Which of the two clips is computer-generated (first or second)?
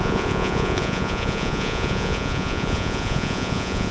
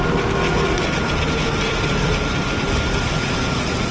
first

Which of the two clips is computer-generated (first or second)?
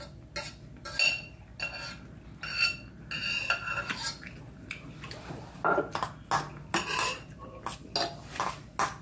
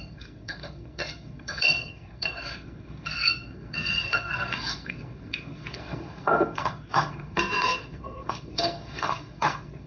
second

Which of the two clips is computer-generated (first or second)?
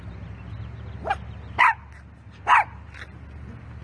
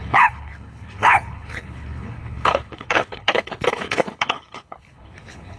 second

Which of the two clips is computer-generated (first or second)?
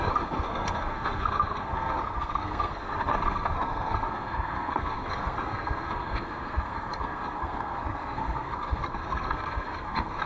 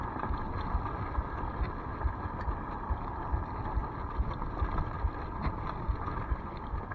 first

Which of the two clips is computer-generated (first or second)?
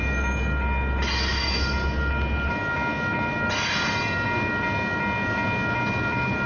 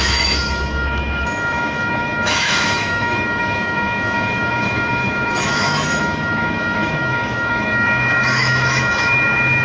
second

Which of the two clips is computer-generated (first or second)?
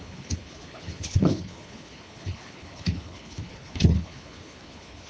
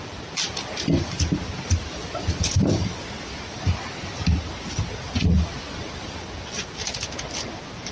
first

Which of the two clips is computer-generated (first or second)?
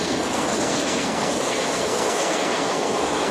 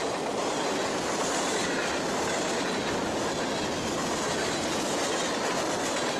first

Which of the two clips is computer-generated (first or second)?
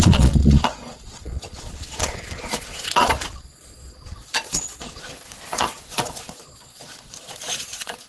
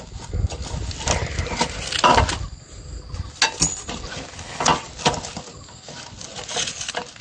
first